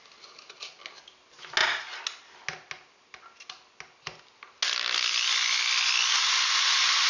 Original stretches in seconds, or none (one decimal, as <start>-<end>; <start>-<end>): 0.0-7.1